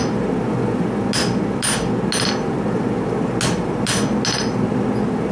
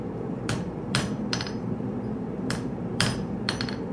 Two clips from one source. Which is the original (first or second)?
first